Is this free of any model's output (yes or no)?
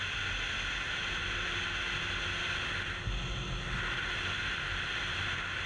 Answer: yes